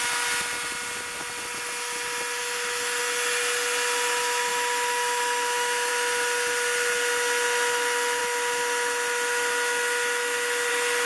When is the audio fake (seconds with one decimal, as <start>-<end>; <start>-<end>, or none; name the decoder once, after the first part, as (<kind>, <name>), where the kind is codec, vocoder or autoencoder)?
2.4-3.0 (autoencoder, DAC-VAE); 4.5-5.9